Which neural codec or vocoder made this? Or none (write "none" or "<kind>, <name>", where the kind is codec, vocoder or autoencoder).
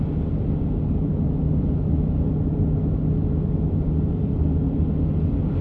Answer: none